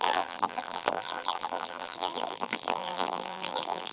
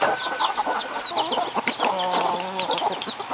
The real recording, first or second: second